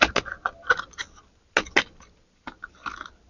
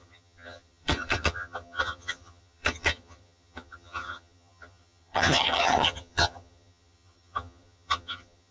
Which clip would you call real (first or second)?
first